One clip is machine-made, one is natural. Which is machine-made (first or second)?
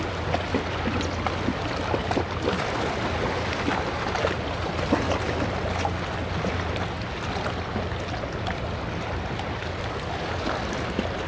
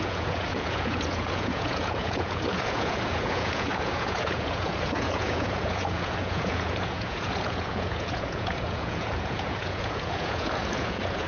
second